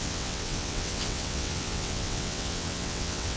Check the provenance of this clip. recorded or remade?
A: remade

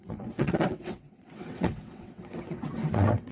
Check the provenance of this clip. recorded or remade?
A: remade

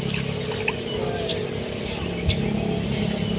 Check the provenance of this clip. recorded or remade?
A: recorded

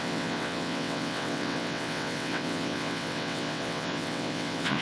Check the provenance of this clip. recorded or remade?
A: remade